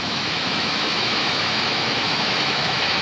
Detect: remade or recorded remade